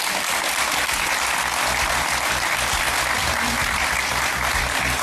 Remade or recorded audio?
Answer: recorded